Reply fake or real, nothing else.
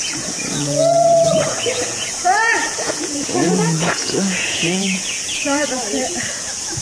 fake